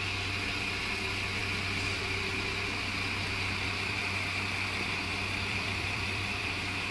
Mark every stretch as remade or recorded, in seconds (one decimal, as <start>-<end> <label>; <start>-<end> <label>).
0.0-3.2 recorded; 3.2-4.0 remade; 4.0-5.1 recorded; 5.1-6.9 remade